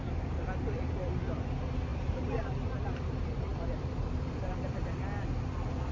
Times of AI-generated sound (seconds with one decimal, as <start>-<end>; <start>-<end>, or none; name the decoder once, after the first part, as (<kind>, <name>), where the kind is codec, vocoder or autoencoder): 1.9-2.7 (vocoder, BigVGAN v2); 3.5-4.5